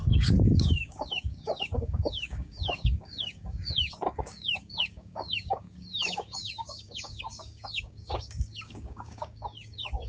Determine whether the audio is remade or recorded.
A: remade